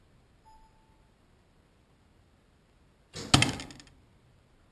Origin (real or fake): real